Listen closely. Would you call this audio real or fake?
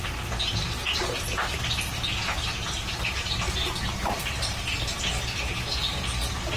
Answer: real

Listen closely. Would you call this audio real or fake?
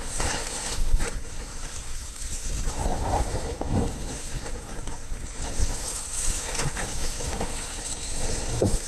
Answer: fake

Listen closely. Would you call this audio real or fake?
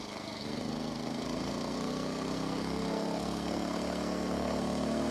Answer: fake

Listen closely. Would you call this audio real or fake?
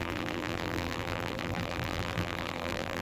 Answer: fake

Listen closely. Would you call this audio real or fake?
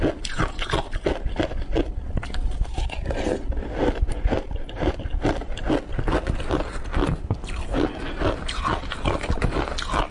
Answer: real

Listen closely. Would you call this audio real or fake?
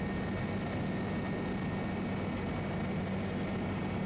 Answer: real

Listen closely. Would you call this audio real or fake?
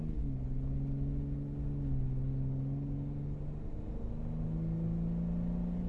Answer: real